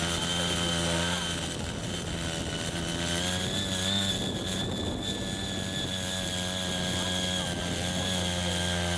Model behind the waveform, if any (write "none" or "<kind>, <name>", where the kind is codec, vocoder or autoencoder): none